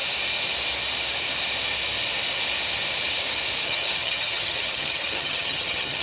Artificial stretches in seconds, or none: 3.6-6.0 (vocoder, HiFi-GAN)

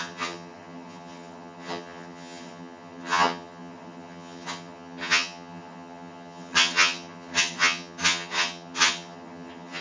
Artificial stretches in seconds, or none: 0.0-9.8 (vocoder, HiFi-GAN)

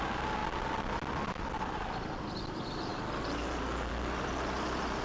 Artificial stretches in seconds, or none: none

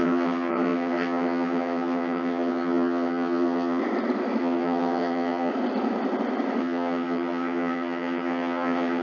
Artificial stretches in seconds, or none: 0.0-3.8 (vocoder, HiFi-GAN); 4.4-5.5; 6.6-9.0

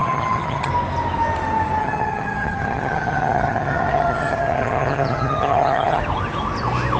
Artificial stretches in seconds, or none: 0.0-0.7 (vocoder, HiFi-GAN); 1.8-6.0